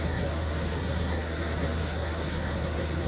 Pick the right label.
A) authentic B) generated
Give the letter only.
B